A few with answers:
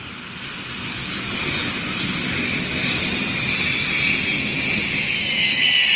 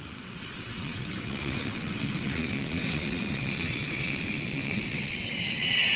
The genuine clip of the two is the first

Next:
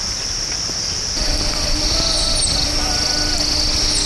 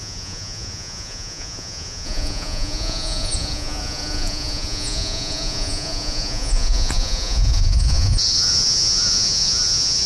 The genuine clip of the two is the first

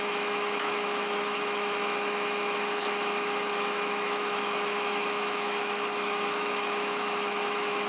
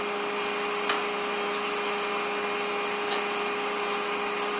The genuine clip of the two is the second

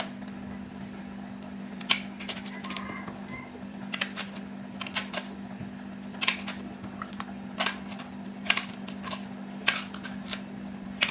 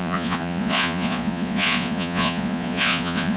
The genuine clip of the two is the first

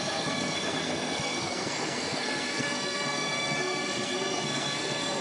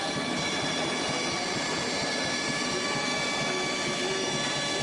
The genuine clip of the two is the second